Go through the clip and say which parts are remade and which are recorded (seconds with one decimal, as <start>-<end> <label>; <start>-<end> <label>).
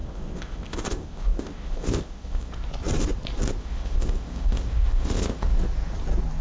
0.0-2.5 remade; 2.5-3.6 recorded; 3.6-5.6 remade; 5.6-6.4 recorded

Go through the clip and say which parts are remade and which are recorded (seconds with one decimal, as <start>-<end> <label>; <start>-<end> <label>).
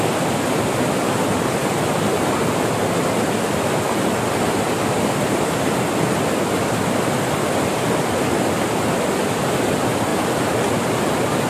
0.0-11.5 recorded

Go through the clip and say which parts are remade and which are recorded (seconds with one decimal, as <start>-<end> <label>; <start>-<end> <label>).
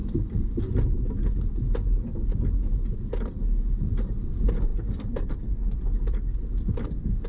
0.0-7.3 recorded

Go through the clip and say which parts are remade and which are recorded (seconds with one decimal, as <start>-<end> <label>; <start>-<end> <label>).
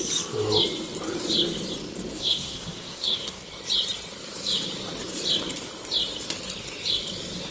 0.0-2.2 recorded; 2.2-3.4 remade; 3.4-7.5 recorded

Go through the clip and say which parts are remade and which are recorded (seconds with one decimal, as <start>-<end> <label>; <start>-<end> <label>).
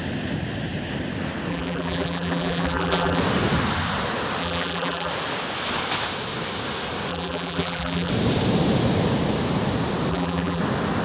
0.0-1.5 recorded; 1.5-3.2 remade; 3.2-4.4 recorded; 4.4-5.1 remade; 5.1-7.1 recorded; 7.1-8.1 remade; 8.1-10.1 recorded; 10.1-10.6 remade; 10.6-11.0 recorded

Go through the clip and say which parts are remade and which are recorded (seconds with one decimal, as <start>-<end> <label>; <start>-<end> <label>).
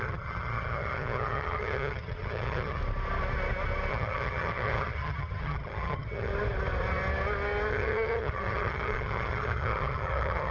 0.0-2.8 remade; 2.8-3.9 recorded; 3.9-6.3 remade; 6.3-7.7 recorded; 7.7-10.5 remade